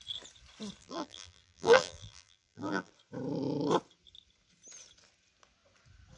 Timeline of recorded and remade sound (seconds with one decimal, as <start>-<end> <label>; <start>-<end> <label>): 0.0-0.8 recorded; 0.8-2.9 remade; 2.9-6.2 recorded